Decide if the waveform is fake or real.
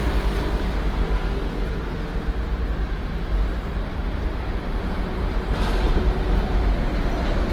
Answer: real